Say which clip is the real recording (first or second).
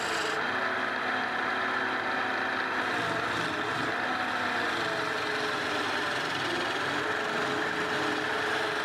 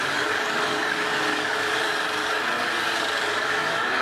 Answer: first